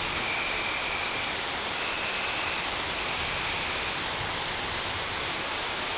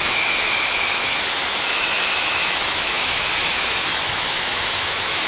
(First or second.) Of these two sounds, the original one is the first